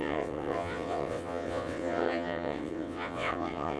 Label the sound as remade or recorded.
remade